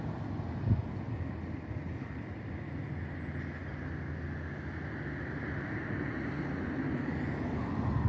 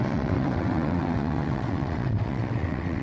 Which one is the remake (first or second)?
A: second